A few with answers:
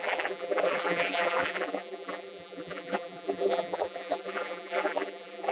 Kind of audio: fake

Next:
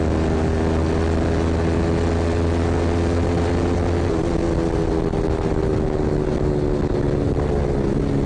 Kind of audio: real